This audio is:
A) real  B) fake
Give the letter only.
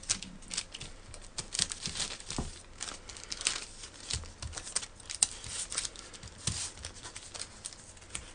A